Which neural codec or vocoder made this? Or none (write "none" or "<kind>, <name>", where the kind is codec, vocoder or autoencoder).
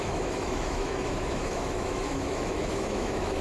autoencoder, DAC-VAE